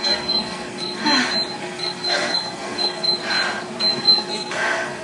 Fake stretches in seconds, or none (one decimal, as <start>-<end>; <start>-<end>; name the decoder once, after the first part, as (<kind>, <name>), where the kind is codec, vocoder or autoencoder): 0.0-1.0 (codec, SNAC); 1.6-3.2; 3.9-5.0